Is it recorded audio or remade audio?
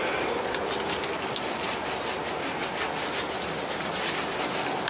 recorded